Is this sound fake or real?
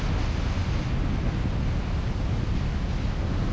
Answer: real